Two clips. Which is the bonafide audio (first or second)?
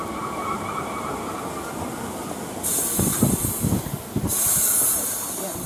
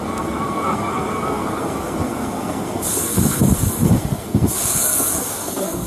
first